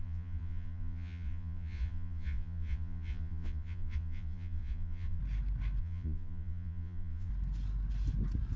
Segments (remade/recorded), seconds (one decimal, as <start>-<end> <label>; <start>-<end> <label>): 0.0-5.2 remade; 5.2-5.8 recorded; 5.8-7.3 remade; 7.3-8.6 recorded